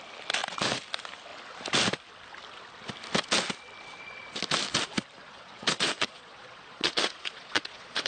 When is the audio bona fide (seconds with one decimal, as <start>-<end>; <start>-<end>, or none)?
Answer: 0.0-5.2